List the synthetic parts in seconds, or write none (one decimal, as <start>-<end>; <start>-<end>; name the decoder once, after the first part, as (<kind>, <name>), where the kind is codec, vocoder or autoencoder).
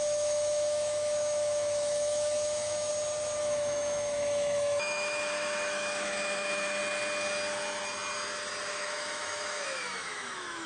0.0-2.9 (autoencoder, DAC-VAE); 3.4-6.8; 8.7-10.7